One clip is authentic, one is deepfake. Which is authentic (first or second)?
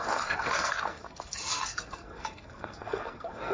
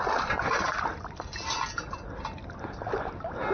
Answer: second